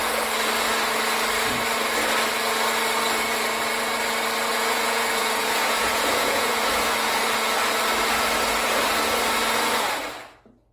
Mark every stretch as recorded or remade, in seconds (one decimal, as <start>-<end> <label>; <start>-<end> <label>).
0.0-4.5 recorded; 4.5-7.2 remade; 7.2-10.7 recorded